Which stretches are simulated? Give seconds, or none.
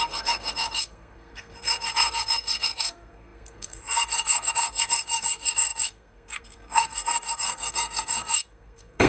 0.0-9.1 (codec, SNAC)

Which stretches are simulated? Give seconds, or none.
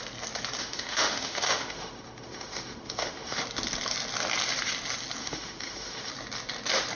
0.6-3.4 (autoencoder, DAC-VAE); 5.2-6.1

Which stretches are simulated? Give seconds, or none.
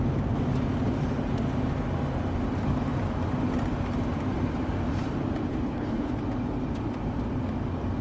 5.5-6.1 (codec, HILCodec)